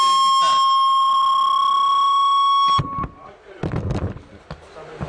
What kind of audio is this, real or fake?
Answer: real